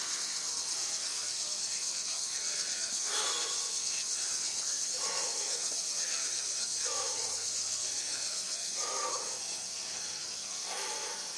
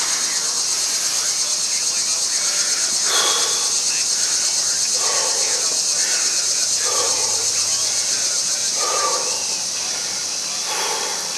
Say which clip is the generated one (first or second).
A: first